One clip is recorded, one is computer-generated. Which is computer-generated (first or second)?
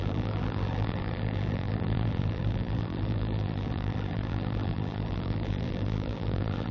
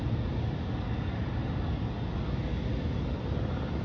first